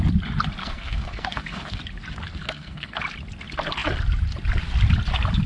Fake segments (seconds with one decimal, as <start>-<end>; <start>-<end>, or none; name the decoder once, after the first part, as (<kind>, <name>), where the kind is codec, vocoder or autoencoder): 0.6-1.8 (codec, SNAC); 2.3-3.0